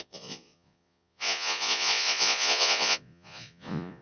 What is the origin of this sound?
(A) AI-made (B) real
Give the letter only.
A